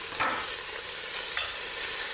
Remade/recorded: remade